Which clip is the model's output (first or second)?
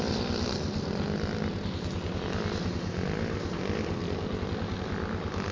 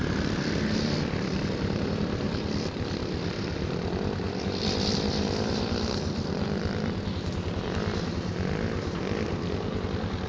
second